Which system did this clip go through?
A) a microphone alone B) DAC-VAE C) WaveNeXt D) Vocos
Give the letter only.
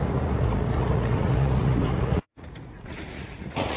D